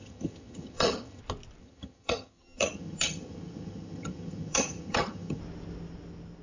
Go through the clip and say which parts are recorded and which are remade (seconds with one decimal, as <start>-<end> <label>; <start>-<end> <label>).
0.0-1.2 remade; 1.2-1.6 recorded; 1.6-5.4 remade; 5.4-6.4 recorded